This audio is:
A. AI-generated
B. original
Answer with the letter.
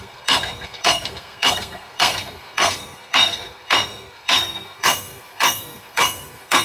A